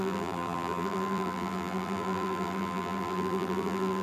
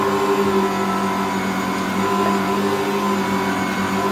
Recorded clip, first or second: second